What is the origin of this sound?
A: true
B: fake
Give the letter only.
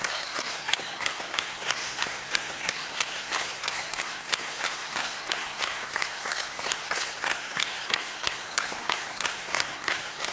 B